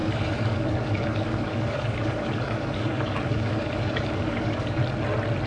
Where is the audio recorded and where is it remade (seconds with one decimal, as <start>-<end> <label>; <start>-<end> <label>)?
0.0-4.8 remade; 4.8-5.5 recorded